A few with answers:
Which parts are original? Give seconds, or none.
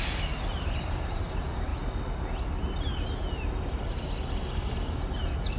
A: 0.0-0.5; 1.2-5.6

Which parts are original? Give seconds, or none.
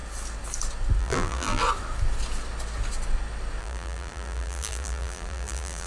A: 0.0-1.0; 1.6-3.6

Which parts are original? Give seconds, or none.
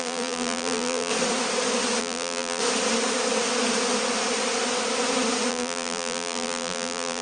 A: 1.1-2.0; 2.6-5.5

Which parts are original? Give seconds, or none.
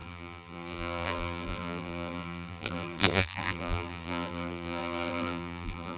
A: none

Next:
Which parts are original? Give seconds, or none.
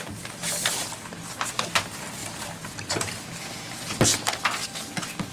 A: 0.0-5.3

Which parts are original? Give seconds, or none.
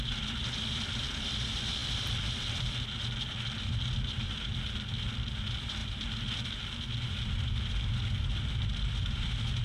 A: 0.0-9.6